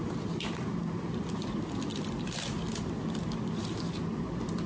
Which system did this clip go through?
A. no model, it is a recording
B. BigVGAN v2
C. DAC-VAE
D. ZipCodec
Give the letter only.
B